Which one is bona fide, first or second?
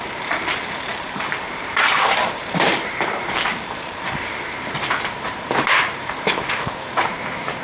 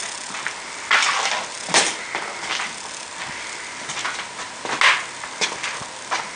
second